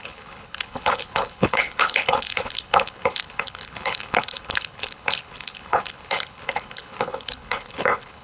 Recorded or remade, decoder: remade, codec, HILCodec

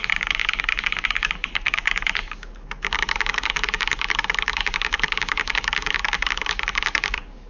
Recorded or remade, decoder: remade, codec, DAC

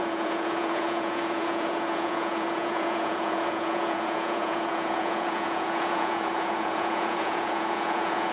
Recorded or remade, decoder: remade, vocoder, Vocos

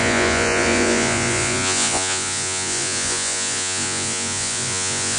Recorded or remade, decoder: remade, vocoder, Vocos